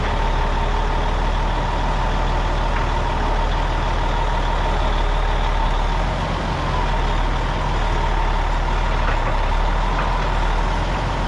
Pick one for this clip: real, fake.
real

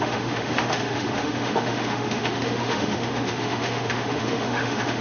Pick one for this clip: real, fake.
fake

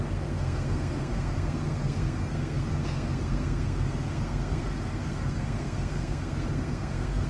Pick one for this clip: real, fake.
fake